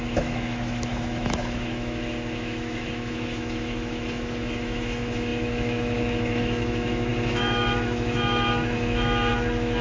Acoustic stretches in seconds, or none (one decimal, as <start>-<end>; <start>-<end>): none